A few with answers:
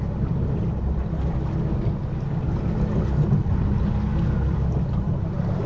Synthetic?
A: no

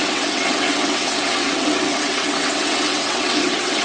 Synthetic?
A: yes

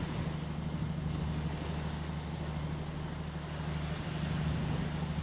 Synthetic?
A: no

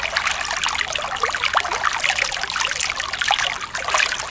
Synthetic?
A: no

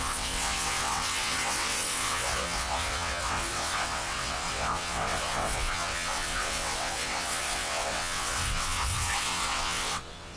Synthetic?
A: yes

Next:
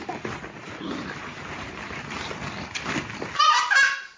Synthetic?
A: no